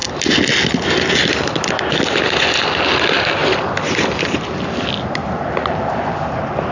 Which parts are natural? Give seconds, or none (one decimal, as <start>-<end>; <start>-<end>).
0.0-3.4; 4.6-5.2; 6.3-6.7